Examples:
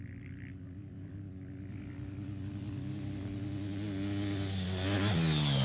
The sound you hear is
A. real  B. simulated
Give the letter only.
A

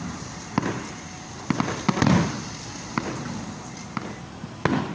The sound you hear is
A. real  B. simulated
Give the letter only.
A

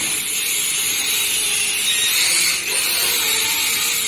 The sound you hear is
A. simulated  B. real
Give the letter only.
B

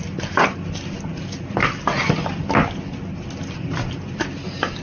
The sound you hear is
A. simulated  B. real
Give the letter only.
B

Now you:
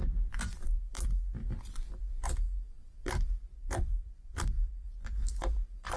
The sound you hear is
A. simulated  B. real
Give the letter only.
A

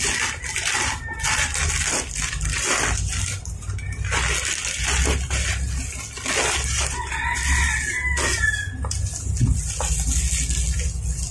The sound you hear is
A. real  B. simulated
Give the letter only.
A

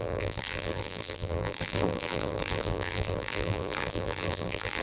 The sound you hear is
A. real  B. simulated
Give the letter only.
B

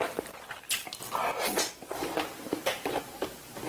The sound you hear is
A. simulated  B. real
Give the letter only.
A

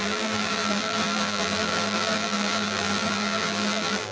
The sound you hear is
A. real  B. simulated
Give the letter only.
B